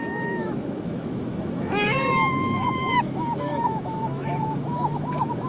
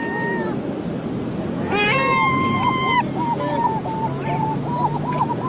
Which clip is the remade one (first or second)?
first